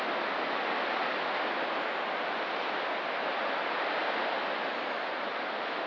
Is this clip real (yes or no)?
yes